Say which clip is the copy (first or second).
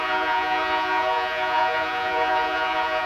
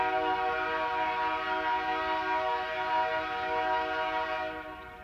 first